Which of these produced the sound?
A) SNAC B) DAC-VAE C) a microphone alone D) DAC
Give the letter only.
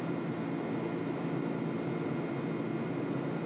C